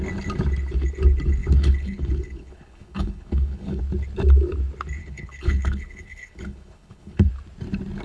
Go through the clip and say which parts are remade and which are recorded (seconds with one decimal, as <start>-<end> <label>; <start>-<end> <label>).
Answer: 0.0-1.4 recorded; 1.4-3.8 remade; 3.8-5.0 recorded; 5.0-7.3 remade; 7.3-8.0 recorded